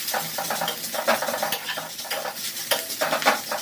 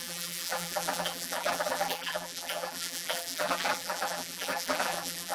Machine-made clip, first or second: second